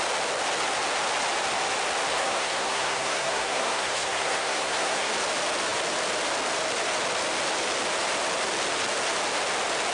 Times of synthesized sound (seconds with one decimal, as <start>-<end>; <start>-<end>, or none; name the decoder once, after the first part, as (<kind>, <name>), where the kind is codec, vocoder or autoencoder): 2.1-5.1 (codec, SNAC)